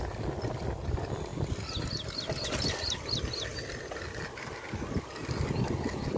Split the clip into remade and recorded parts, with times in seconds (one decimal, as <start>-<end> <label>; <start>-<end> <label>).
0.0-6.2 recorded